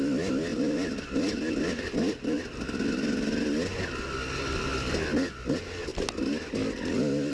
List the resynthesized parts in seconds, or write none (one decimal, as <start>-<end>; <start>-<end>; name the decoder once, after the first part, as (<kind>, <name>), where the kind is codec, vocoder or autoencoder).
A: none